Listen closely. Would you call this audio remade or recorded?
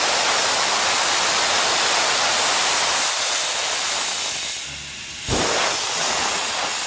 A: recorded